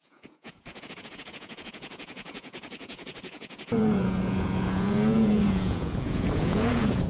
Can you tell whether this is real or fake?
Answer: fake